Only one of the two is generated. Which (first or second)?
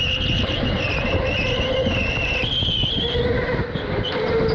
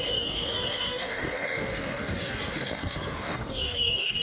second